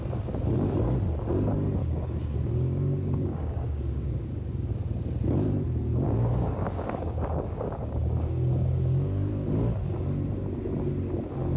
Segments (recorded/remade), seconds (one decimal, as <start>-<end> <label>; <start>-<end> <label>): 0.0-1.8 recorded; 1.8-4.7 remade; 4.7-5.9 recorded; 5.9-9.3 remade; 9.3-11.6 recorded